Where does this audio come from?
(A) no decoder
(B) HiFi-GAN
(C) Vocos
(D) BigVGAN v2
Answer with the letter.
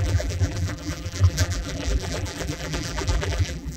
D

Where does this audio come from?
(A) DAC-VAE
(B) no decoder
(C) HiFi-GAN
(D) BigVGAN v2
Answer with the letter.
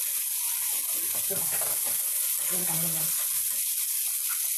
B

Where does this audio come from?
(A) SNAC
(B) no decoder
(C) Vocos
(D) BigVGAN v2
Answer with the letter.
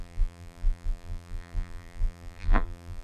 D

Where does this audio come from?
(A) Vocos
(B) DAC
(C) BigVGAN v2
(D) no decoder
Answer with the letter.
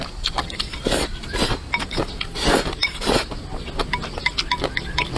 D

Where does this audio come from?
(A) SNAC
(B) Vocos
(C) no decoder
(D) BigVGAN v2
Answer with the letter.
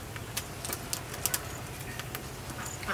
C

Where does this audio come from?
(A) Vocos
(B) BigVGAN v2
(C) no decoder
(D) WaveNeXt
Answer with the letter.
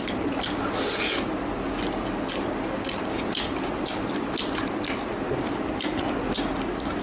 C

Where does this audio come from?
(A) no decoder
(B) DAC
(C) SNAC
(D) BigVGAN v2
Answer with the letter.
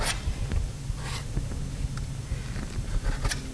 A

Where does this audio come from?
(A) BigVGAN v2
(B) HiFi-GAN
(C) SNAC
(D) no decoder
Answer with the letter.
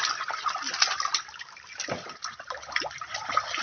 A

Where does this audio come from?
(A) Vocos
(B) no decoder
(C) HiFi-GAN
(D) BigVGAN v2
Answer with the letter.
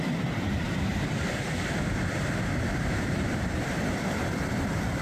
B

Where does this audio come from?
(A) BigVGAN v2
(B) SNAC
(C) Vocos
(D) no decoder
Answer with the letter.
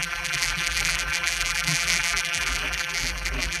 A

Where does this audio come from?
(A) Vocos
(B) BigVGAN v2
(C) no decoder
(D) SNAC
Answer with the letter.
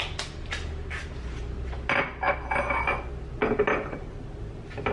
C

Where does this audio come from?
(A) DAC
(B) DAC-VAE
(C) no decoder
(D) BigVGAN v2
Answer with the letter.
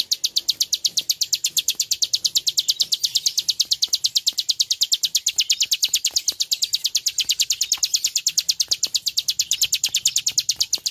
D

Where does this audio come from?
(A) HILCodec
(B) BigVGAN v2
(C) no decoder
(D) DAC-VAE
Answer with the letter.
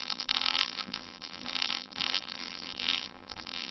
B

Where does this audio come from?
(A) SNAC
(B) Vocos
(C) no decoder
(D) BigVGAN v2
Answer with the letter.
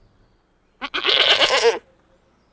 C